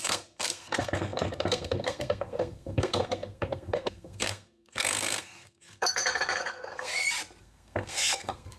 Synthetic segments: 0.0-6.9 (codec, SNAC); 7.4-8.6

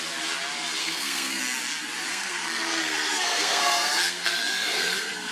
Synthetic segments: 0.8-1.4 (codec, SNAC); 2.1-5.3

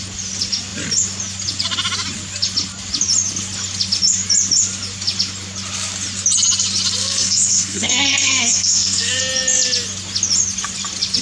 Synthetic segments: 7.0-9.2 (codec, SNAC)

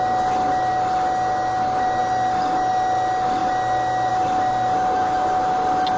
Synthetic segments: none

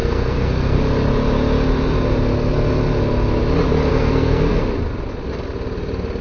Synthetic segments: 0.0-0.8 (codec, SNAC); 3.9-4.6

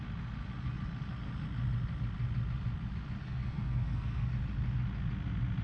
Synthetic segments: 3.2-4.3 (codec, SNAC)

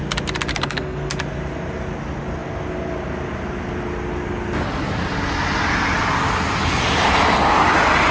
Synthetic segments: 0.5-1.1 (codec, SNAC)

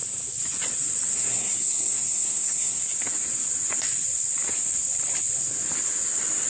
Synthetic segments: 1.1-2.8 (codec, SNAC)